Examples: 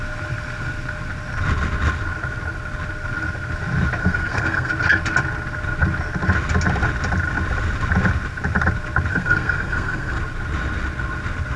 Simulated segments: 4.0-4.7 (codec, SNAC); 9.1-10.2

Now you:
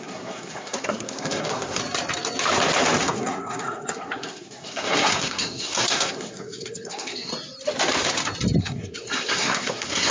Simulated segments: 0.0-1.8 (codec, SNAC); 3.0-7.3; 8.6-10.1

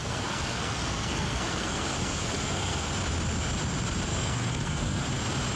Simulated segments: 0.0-2.9 (codec, SNAC); 4.1-5.0